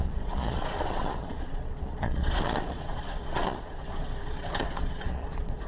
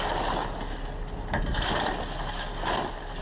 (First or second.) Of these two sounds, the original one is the second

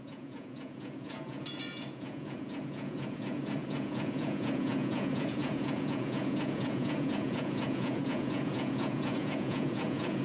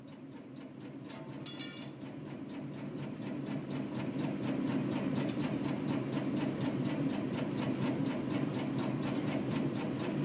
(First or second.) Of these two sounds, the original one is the second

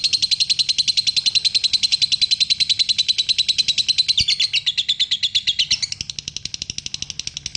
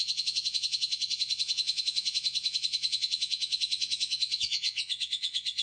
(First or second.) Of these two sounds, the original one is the first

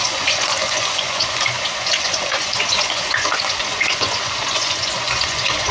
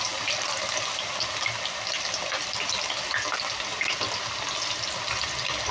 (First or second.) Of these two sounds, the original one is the second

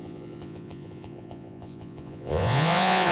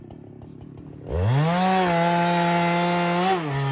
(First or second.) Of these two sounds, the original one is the second